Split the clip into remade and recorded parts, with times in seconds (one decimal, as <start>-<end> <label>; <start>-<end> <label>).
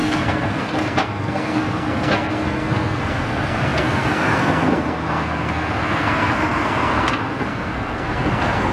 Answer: 0.0-8.7 remade